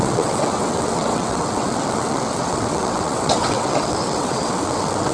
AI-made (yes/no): yes